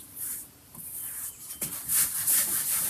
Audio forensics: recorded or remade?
remade